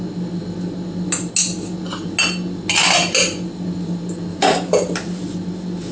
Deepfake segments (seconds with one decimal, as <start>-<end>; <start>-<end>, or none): 4.3-4.9